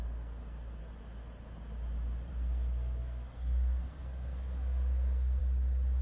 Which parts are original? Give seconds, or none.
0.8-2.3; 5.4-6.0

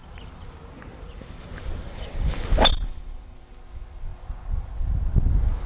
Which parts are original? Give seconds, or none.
0.5-0.9; 3.5-5.7

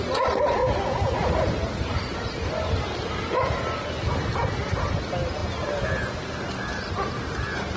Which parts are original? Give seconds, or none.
0.6-1.3; 5.4-6.4

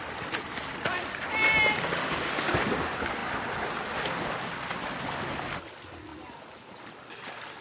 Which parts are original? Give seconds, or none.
0.0-7.6

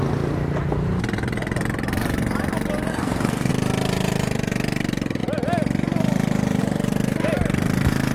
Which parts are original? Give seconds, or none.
0.0-2.9; 3.5-8.1

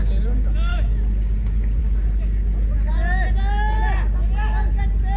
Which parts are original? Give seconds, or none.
0.0-5.2

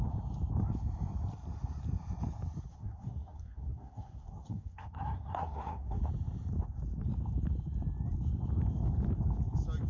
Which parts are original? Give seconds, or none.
0.0-2.7; 6.0-9.9

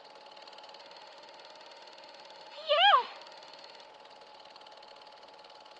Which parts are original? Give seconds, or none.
0.0-0.8; 3.9-5.8